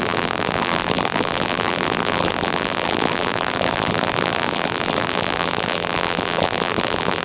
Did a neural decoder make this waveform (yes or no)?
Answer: yes